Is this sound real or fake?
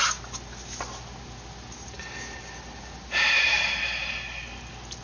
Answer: real